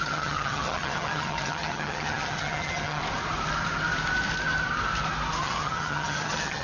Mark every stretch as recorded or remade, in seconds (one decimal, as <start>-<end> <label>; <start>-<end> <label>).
0.0-3.0 remade; 3.0-5.4 recorded; 5.4-6.6 remade